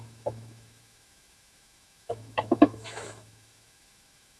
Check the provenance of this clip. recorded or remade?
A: remade